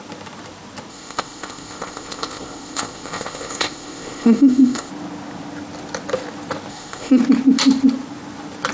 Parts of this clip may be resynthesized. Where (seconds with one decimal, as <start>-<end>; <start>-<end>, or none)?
0.9-4.9; 6.7-7.2

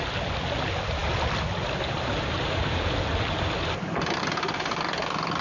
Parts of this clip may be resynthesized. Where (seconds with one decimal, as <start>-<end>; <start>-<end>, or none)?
none